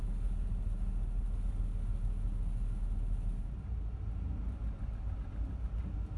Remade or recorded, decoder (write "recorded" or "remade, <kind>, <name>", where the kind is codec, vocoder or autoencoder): recorded